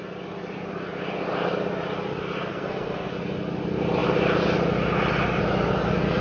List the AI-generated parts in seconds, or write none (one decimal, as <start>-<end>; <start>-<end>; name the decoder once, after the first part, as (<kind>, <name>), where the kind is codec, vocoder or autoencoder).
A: 2.5-3.1 (codec, SNAC)

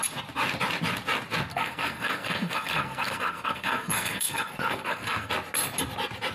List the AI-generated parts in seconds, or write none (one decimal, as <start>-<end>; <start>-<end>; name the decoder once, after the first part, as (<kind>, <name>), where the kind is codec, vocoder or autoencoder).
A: 1.5-5.3 (codec, SNAC)

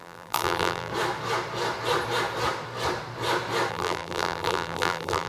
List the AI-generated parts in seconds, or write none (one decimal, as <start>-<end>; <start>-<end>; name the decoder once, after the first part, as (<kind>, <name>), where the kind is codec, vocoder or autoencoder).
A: 0.0-0.9 (vocoder, BigVGAN v2); 3.7-5.3

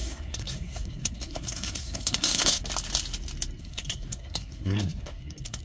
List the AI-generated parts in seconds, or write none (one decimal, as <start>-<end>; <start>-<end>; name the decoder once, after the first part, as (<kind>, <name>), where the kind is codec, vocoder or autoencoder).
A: 0.0-2.6 (codec, SNAC); 3.6-5.6

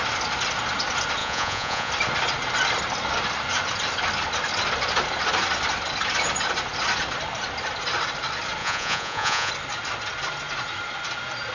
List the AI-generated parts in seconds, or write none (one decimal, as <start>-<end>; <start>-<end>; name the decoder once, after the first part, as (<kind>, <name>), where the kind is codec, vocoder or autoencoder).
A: 1.2-1.9 (vocoder, Vocos); 8.6-9.5

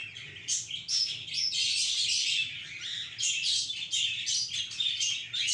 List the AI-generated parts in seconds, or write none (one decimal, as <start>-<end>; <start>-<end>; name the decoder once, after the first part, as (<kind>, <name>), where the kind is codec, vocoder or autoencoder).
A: 1.6-4.6 (vocoder, BigVGAN v2)

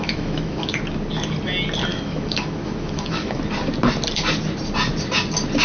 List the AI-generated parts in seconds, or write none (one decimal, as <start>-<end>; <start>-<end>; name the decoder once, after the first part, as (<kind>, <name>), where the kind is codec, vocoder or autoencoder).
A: 0.0-0.8 (autoencoder, DAC-VAE); 1.9-3.4